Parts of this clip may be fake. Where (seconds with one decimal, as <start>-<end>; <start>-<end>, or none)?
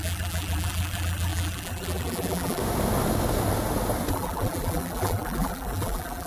0.0-2.6; 4.1-6.3